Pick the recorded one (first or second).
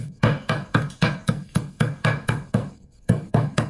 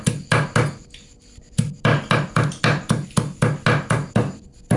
second